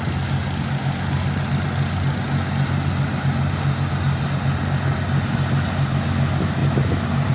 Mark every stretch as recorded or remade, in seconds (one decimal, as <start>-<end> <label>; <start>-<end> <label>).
0.0-6.6 recorded; 6.6-7.3 remade